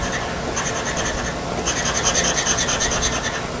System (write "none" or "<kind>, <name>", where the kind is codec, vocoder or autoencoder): none